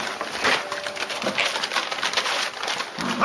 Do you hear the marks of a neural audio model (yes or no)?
no